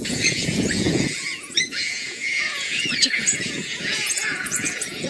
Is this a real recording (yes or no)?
no